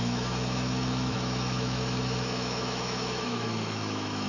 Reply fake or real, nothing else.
fake